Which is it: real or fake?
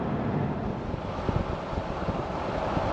real